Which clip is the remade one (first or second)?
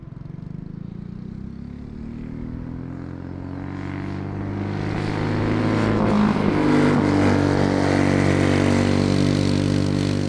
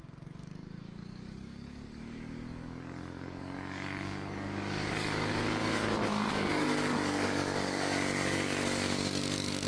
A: second